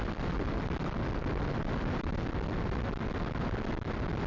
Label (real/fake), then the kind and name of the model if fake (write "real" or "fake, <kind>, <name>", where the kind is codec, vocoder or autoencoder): real